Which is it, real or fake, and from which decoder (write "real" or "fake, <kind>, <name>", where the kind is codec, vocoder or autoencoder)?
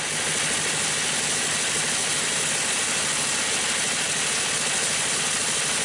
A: real